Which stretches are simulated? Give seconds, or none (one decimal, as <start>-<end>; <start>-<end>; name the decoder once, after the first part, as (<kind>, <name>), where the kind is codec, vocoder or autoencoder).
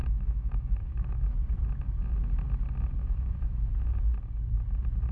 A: 0.0-1.3 (autoencoder, DAC-VAE); 3.0-3.9